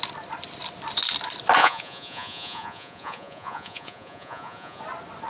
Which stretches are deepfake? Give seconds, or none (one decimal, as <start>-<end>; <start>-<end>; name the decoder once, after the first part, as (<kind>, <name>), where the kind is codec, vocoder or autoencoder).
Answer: 1.6-4.8 (vocoder, Vocos)

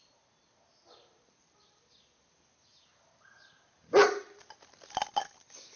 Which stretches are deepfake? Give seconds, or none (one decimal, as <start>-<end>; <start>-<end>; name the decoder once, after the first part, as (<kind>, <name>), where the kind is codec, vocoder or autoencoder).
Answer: none